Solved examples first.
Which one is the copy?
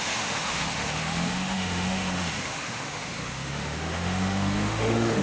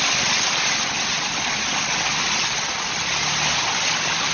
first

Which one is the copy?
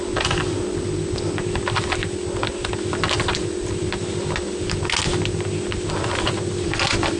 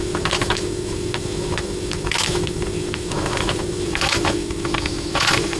second